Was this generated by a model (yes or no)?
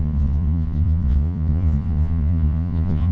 yes